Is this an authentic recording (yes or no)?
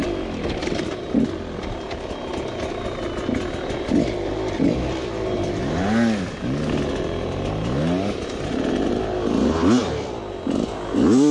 yes